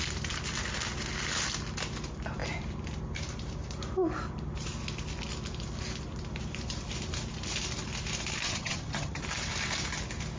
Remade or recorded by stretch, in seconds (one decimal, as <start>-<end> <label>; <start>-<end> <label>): 0.0-8.4 recorded; 8.4-9.2 remade; 9.2-10.4 recorded